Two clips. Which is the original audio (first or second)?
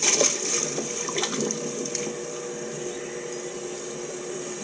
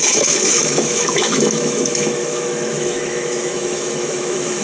first